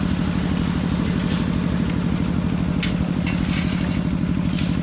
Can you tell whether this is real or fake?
real